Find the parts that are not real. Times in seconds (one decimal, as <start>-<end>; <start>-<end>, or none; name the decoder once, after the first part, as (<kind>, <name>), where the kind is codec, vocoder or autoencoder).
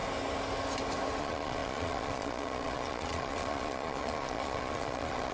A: 1.2-5.3 (vocoder, Vocos)